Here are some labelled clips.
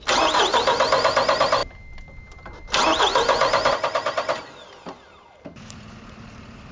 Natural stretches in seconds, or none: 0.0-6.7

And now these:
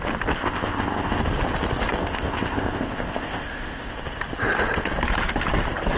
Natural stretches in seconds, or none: 0.0-0.4; 1.2-2.0; 4.0-6.0

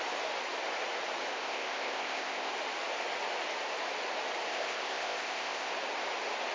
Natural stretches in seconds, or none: 0.0-1.3; 2.5-4.5; 5.7-6.5

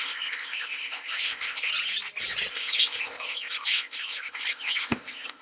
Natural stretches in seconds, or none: 1.7-2.5

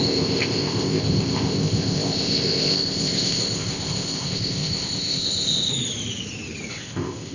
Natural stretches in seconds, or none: 5.7-6.7

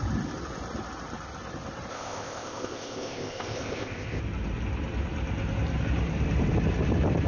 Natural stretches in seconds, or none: 0.0-1.9; 4.2-7.3